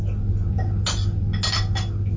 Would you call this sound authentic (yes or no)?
yes